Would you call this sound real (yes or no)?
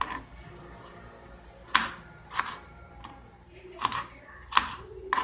yes